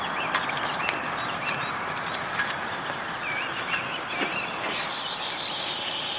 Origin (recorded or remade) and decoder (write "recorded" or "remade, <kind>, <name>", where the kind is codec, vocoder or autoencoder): recorded